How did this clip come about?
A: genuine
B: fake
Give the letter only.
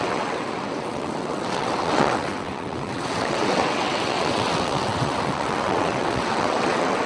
B